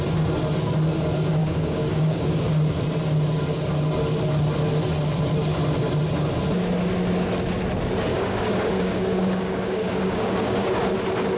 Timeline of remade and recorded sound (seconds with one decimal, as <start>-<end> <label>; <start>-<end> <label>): 0.0-1.4 recorded; 1.4-2.7 remade; 2.7-8.1 recorded; 8.1-10.9 remade; 10.9-11.4 recorded